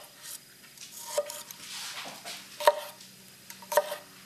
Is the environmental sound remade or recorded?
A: recorded